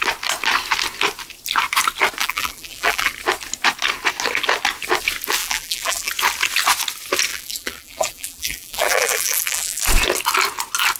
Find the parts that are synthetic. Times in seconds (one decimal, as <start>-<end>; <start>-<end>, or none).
2.2-3.1; 5.4-6.1; 7.3-9.8